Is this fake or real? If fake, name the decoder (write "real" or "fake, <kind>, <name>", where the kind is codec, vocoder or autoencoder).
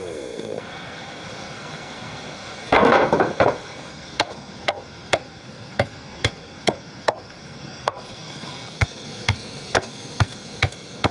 fake, codec, SNAC